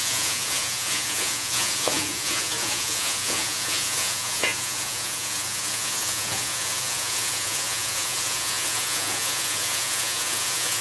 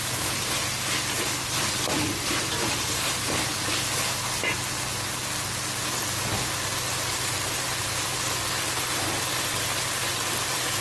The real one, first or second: second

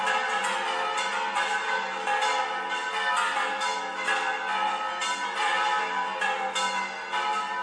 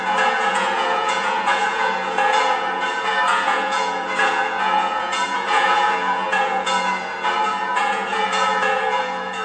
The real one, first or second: first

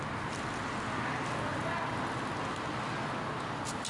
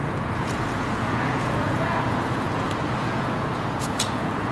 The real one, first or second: first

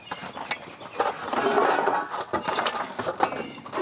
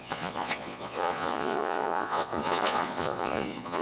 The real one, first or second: first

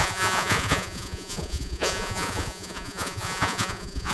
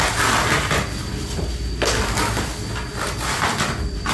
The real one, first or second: second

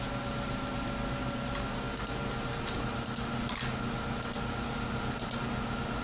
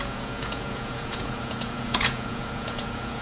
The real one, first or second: first